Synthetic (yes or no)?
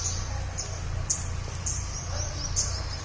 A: no